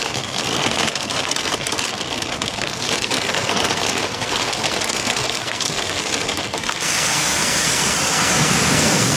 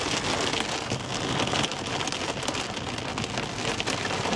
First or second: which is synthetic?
first